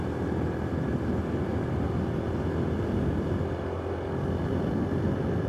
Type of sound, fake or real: real